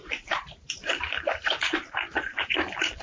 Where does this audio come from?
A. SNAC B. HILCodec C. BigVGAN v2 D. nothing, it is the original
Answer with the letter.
C